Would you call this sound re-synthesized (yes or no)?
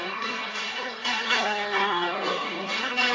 yes